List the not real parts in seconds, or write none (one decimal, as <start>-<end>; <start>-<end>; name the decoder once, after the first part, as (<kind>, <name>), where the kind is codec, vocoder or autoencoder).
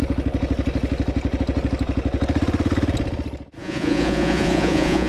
3.6-5.1 (vocoder, Vocos)